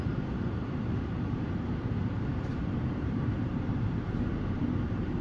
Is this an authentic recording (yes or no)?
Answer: no